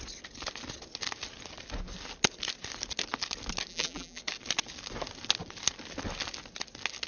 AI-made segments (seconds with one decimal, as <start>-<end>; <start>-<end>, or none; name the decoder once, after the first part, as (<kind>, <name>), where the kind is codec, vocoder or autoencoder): 3.7-4.2 (vocoder, BigVGAN v2)